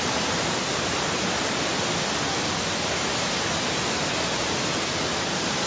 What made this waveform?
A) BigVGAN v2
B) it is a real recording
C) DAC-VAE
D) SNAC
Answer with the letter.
B